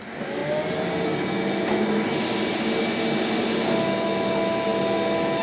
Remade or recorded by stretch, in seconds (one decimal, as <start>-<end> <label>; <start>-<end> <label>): 0.0-5.4 recorded